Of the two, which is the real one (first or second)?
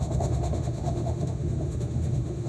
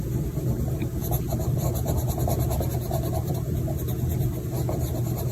second